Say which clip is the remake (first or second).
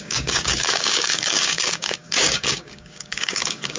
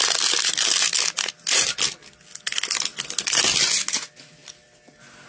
first